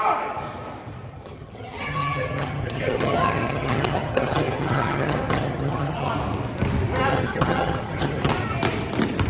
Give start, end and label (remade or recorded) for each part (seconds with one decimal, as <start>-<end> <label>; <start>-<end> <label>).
0.0-1.1 recorded; 1.1-6.1 remade; 6.1-7.1 recorded; 7.1-8.3 remade; 8.3-9.3 recorded

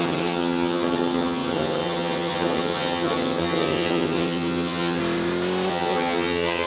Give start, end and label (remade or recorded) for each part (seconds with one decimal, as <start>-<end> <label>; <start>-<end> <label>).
0.0-5.0 remade; 5.0-5.7 recorded; 5.7-6.7 remade

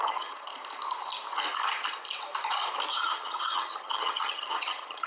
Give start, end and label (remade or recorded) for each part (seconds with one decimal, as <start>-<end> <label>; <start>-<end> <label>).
0.0-0.5 remade; 0.5-2.9 recorded; 2.9-5.1 remade

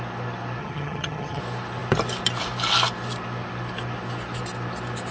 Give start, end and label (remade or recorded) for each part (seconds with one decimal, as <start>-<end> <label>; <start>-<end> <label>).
0.0-0.6 recorded; 0.6-1.4 remade; 1.4-5.1 recorded

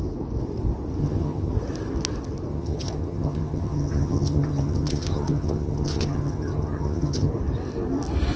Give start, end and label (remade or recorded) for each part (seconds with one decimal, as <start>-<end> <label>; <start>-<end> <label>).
0.0-1.0 recorded; 1.0-1.5 remade; 1.5-2.5 recorded; 2.5-7.3 remade; 7.3-8.4 recorded

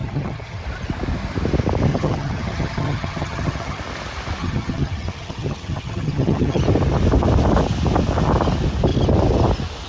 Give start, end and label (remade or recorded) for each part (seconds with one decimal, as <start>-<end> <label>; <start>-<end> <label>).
0.0-0.6 remade; 0.6-1.9 recorded; 1.9-3.8 remade; 3.8-4.4 recorded; 4.4-6.6 remade; 6.6-9.9 recorded